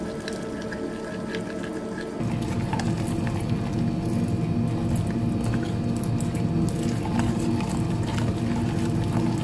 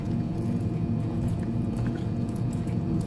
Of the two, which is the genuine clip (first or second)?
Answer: first